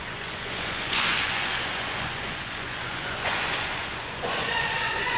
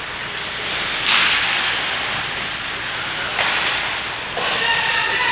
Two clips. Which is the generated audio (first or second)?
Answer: first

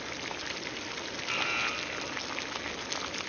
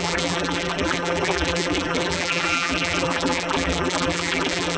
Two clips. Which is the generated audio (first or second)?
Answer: second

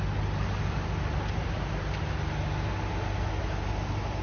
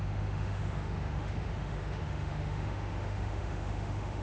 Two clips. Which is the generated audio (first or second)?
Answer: second